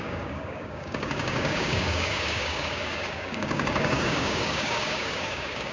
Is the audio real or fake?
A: fake